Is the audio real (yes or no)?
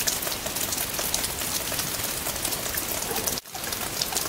no